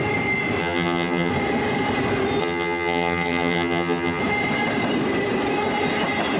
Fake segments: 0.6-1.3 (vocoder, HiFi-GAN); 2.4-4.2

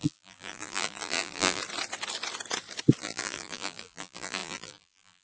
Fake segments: 0.0-1.6 (vocoder, BigVGAN v2); 3.0-5.2

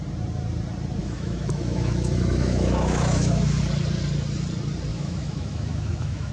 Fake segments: 1.0-3.6 (autoencoder, DAC-VAE); 4.9-6.3

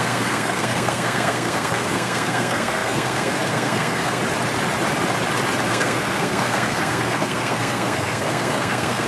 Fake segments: 0.0-4.2 (codec, SNAC); 5.7-9.1

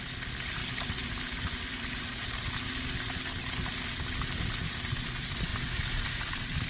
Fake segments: none

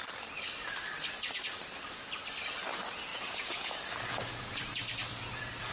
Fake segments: 3.1-3.7 (vocoder, Vocos)